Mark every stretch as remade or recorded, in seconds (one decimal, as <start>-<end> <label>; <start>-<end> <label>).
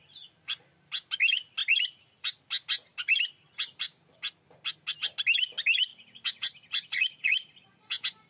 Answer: 0.0-1.6 recorded; 1.6-2.4 remade; 2.4-2.9 recorded; 2.9-3.5 remade; 3.5-5.9 recorded; 5.9-7.8 remade; 7.8-8.3 recorded